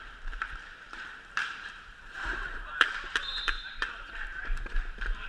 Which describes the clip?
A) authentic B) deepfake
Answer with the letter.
B